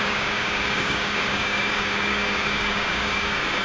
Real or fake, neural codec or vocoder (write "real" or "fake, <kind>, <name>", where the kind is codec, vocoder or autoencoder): fake, codec, DAC